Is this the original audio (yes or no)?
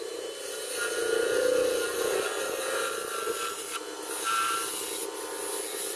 yes